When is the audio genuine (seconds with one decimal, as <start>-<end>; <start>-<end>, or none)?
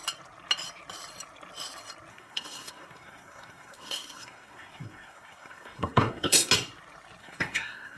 0.0-2.1; 6.5-7.2